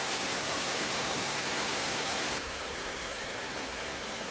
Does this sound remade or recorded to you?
remade